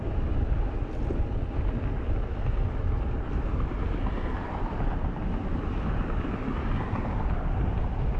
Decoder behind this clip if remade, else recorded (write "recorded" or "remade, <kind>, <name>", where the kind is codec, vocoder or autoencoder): recorded